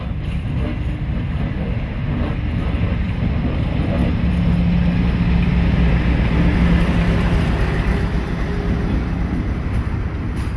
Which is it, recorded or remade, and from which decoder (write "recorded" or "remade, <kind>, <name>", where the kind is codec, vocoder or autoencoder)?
recorded